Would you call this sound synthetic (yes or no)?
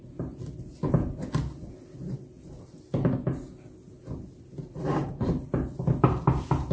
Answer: no